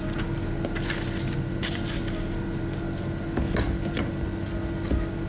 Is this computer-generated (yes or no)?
no